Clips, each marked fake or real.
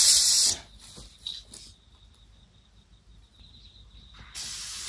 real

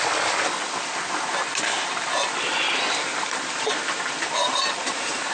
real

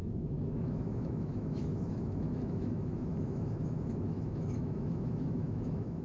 fake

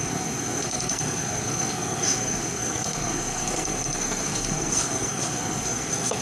fake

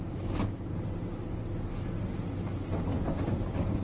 real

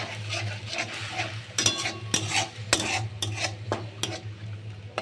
real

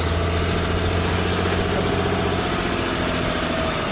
real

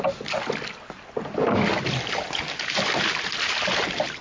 real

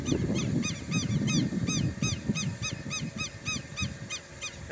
real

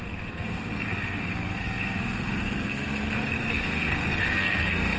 fake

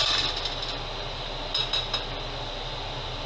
real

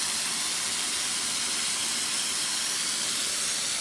real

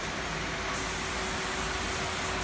real